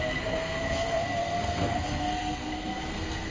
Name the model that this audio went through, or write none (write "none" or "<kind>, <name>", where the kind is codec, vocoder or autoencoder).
codec, SNAC